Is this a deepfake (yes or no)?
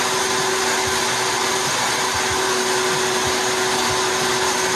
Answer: no